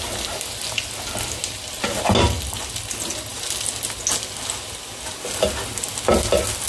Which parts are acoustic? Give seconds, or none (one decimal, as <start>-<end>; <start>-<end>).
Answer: 0.0-6.7